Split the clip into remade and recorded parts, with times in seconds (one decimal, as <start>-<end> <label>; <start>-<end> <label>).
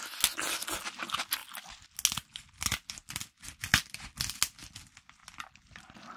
0.0-6.2 recorded